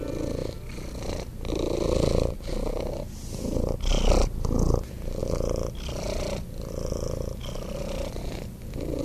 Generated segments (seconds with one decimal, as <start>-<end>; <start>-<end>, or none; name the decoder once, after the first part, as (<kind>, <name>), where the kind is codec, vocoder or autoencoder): none

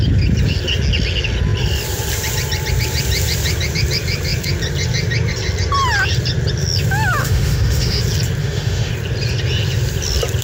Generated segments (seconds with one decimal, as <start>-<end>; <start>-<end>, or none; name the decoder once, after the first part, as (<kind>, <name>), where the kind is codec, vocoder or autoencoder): 7.2-8.0 (autoencoder, DAC-VAE); 8.4-8.9

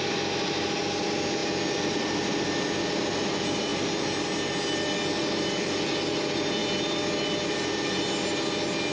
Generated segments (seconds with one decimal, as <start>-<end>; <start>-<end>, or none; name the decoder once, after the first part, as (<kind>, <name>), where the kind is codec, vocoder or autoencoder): none

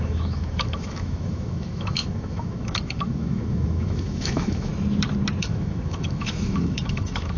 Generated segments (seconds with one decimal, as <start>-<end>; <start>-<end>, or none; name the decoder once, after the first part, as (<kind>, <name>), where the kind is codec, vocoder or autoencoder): 0.0-4.7 (autoencoder, DAC-VAE); 5.4-7.4